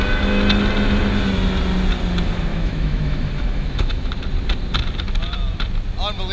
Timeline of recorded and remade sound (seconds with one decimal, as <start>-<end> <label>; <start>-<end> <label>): 0.0-2.5 recorded; 2.5-4.1 remade; 4.1-6.3 recorded